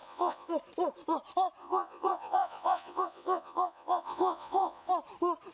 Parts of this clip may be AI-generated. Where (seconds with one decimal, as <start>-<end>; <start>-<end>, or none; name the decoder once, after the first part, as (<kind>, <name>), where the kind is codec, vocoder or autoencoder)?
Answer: 0.0-0.5 (vocoder, Vocos); 1.6-4.9